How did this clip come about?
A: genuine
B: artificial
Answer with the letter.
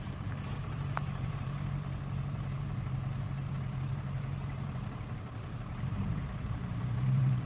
B